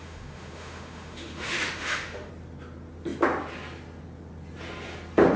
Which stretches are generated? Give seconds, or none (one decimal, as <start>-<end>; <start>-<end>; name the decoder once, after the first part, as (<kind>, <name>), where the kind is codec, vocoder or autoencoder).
0.0-2.3 (autoencoder, DAC-VAE)